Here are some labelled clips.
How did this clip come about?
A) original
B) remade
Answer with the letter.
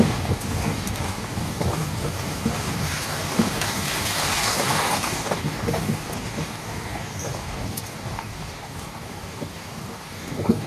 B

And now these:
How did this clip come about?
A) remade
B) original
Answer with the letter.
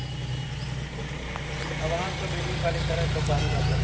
B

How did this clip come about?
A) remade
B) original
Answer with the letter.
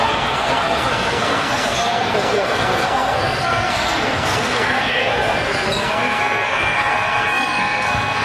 A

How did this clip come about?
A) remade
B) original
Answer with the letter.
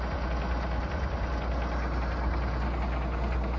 B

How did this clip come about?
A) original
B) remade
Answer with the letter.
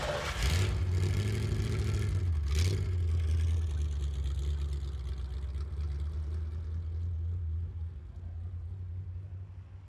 A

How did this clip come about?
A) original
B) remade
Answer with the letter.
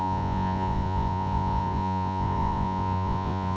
B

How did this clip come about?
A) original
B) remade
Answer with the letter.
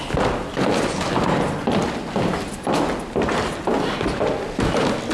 A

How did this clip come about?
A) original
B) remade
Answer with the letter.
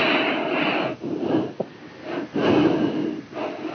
A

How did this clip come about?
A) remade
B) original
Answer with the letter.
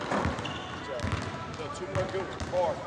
B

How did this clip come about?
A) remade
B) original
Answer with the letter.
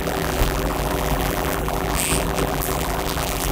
A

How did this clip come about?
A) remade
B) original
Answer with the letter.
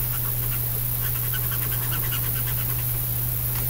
B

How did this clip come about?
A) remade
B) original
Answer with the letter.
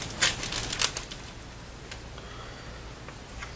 B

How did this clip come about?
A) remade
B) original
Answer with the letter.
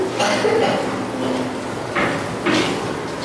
B